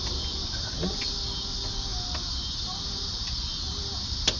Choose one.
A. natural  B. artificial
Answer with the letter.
A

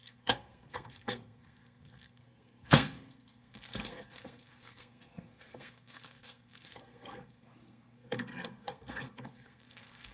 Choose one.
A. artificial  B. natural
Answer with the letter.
A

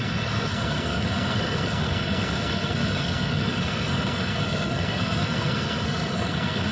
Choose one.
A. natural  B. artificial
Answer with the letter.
B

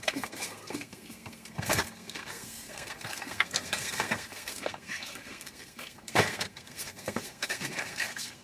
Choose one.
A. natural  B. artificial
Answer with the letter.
B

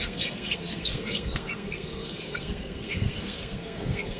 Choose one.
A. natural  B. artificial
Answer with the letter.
B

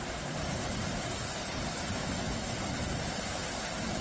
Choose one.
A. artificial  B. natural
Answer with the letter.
B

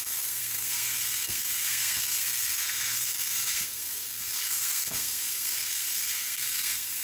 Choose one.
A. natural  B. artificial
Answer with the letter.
B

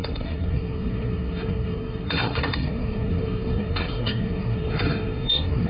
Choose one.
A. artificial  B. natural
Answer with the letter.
A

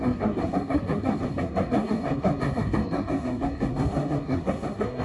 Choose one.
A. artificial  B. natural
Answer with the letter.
A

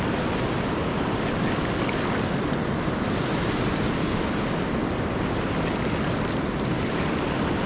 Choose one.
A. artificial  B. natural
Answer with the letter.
B